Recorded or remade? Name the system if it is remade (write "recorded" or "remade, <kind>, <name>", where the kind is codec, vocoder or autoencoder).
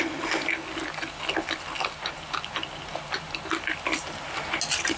recorded